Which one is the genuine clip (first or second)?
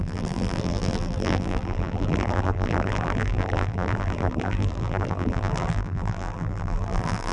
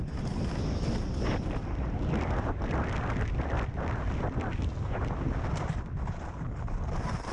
second